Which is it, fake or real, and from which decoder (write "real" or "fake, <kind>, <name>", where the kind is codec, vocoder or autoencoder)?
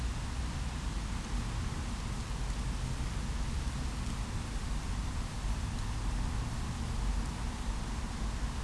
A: real